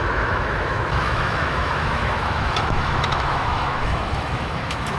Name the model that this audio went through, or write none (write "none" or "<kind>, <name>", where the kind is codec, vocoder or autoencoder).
autoencoder, DAC-VAE